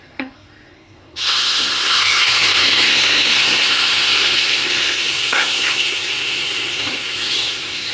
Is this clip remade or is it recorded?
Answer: remade